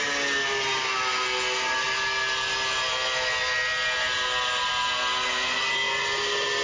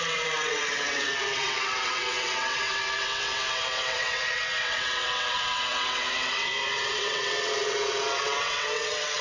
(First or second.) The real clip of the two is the first